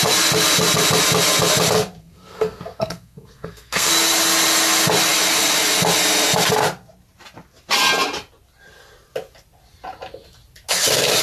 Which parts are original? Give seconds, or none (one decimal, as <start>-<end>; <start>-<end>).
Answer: 0.0-2.0; 3.9-11.2